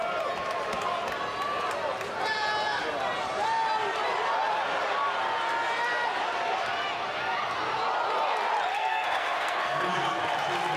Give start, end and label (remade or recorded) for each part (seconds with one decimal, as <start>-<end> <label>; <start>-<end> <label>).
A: 0.0-8.7 recorded; 8.7-10.2 remade; 10.2-10.8 recorded